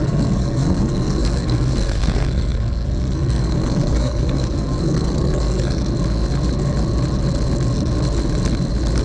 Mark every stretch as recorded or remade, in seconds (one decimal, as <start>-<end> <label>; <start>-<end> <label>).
0.0-5.8 remade; 5.8-9.0 recorded